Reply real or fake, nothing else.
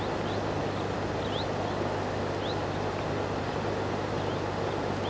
real